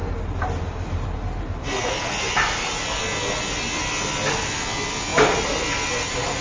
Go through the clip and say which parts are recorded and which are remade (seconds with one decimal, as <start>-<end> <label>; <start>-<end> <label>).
0.0-6.4 recorded